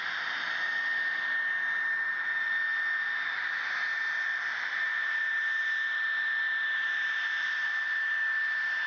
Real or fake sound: real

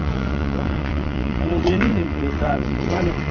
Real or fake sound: fake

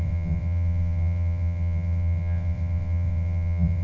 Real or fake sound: fake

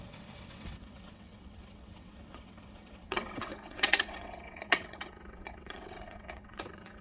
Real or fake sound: fake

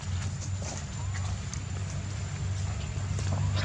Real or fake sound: real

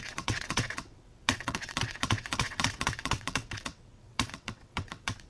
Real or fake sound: fake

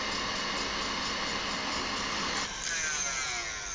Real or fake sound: real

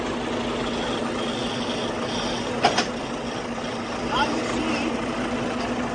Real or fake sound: real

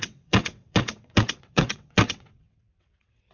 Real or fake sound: fake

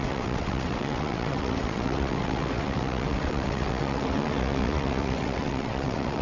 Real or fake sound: fake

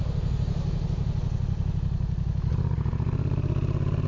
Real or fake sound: real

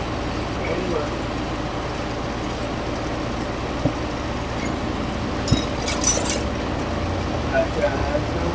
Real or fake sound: real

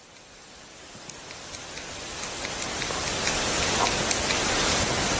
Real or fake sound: real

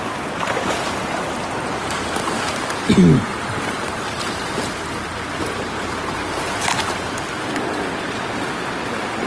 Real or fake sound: real